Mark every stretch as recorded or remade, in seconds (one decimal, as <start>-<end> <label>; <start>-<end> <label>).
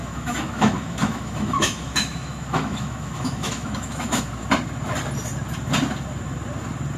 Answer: 0.0-4.2 remade; 4.2-7.0 recorded